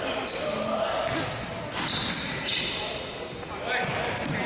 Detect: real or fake real